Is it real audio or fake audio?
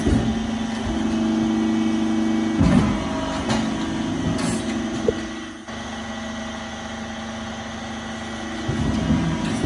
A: real